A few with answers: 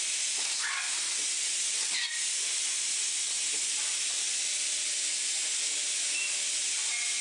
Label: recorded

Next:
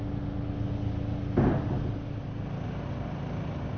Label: recorded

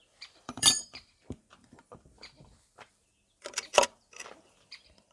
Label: remade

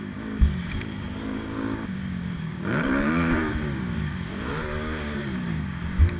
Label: remade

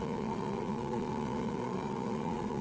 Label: remade